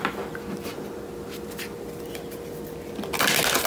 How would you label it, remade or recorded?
recorded